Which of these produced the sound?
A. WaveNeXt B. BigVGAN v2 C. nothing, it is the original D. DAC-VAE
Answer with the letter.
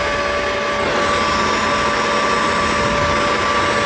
C